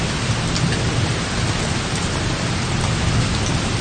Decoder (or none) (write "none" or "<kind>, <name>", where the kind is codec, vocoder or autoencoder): none